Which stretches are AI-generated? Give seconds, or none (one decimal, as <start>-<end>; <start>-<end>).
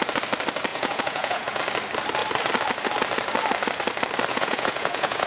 0.7-1.6; 4.3-5.3